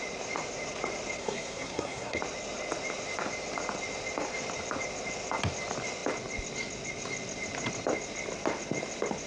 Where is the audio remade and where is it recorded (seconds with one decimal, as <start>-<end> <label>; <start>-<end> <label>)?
0.0-1.2 recorded; 1.2-2.2 remade; 2.2-9.3 recorded